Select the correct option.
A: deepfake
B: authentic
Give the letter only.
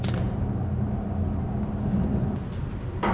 B